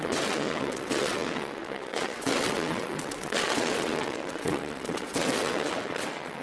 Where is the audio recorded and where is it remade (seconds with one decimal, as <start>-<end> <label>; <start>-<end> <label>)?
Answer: 0.0-6.4 remade